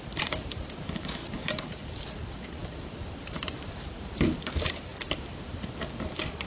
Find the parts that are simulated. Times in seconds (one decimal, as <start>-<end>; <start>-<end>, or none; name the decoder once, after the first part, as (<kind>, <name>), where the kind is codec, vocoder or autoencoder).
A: 0.0-4.9 (vocoder, BigVGAN v2); 5.9-6.5